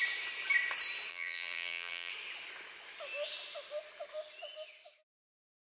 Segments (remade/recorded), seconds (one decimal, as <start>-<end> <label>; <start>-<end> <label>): 0.0-1.1 recorded; 1.1-2.1 remade; 2.1-5.7 recorded